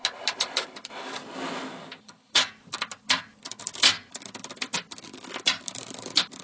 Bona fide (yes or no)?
yes